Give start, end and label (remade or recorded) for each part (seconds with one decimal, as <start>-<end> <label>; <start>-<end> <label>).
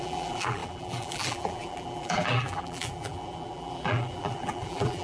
0.0-5.0 remade